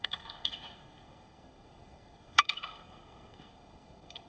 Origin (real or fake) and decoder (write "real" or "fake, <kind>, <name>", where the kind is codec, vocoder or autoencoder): fake, codec, SNAC